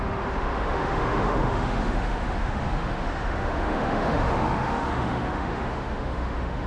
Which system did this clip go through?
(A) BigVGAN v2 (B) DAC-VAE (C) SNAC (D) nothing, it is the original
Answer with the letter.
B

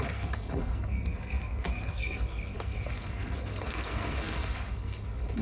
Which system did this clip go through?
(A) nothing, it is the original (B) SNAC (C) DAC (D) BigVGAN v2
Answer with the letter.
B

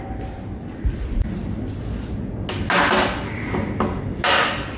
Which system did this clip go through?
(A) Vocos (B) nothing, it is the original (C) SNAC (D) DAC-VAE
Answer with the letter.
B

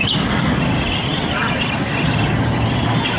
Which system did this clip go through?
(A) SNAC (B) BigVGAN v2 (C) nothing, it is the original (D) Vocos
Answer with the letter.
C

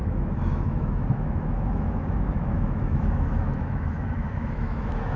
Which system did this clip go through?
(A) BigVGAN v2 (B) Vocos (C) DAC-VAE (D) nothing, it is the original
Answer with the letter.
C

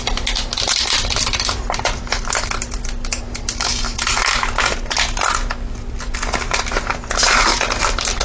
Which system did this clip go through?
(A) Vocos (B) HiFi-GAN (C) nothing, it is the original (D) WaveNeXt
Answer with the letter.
C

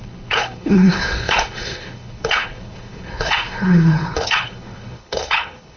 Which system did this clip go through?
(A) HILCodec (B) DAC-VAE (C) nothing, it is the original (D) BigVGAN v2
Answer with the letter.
A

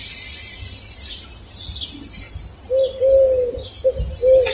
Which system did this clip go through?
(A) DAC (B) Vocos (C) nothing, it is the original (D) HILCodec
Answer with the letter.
C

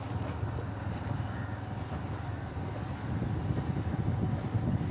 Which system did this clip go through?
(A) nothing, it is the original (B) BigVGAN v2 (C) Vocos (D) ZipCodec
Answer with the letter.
A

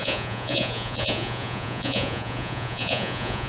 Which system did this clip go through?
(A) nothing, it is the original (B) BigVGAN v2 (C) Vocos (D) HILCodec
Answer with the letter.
C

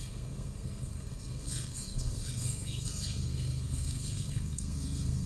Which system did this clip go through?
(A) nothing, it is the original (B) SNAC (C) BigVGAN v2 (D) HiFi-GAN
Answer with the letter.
B